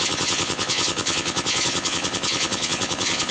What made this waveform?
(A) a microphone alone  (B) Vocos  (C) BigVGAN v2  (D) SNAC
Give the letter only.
B